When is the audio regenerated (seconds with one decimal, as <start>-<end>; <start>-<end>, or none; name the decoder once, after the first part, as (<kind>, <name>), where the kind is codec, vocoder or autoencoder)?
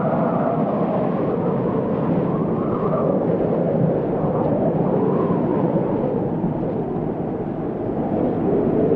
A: 5.5-6.3 (vocoder, Vocos)